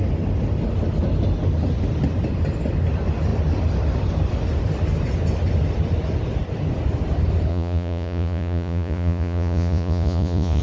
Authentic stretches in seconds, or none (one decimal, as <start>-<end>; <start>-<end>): 0.0-7.5